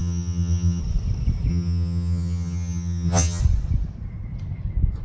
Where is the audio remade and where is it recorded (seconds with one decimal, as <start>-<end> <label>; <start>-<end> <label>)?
0.0-0.8 remade; 0.8-1.5 recorded; 1.5-3.4 remade; 3.4-5.0 recorded